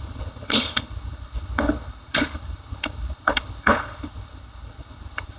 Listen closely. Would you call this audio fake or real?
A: fake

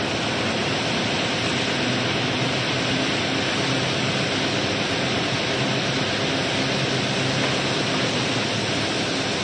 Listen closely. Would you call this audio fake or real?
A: real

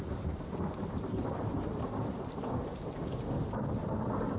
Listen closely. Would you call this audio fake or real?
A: fake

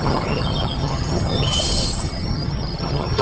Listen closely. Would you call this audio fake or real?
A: fake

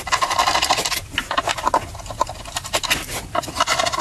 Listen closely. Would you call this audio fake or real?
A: real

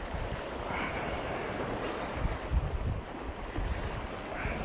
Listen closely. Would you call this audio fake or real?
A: real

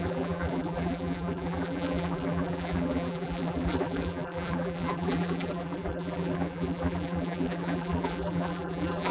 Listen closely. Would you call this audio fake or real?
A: fake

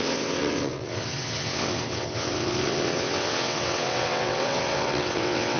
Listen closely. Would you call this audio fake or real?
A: fake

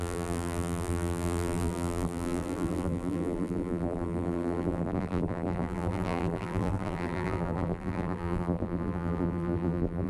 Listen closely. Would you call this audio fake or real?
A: fake